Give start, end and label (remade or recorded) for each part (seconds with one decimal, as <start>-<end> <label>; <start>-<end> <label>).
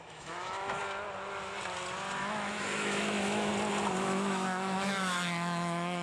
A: 0.0-0.8 remade; 0.8-2.2 recorded; 2.2-3.5 remade; 3.5-4.0 recorded; 4.0-6.0 remade